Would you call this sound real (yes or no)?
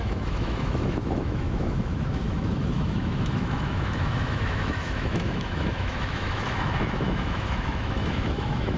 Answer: no